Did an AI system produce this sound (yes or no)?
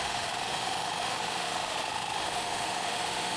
yes